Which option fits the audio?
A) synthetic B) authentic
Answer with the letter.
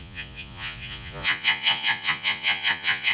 A